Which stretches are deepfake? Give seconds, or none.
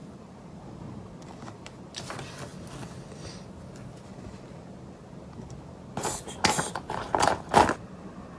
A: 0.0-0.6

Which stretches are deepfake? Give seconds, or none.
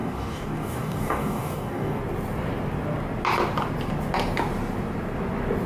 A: 0.0-2.0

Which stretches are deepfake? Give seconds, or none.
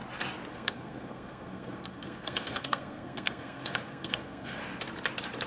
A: 0.5-4.6